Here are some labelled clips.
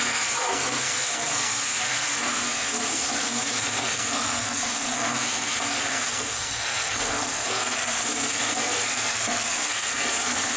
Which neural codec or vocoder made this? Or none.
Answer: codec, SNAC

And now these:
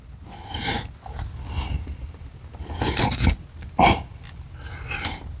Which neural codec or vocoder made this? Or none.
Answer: none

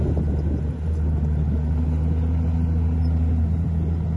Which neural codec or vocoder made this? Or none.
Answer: none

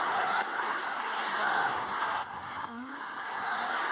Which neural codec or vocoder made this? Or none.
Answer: codec, SNAC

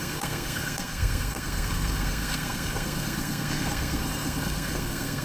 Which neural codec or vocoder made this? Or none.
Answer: codec, SNAC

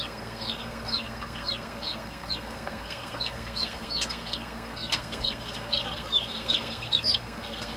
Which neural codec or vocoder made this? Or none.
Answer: codec, SNAC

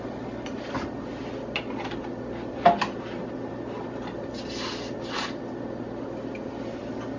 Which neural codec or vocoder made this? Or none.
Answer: none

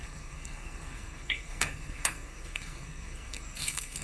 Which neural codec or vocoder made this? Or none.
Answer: codec, SNAC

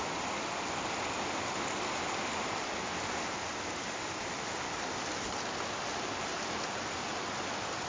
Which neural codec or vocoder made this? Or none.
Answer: none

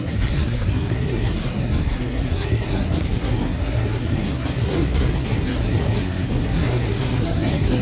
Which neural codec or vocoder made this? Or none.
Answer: codec, SNAC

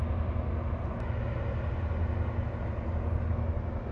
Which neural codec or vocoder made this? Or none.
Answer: none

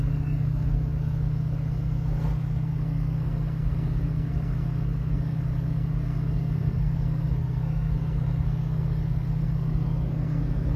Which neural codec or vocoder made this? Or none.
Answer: codec, SNAC